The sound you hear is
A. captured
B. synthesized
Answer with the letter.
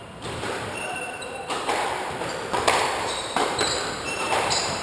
B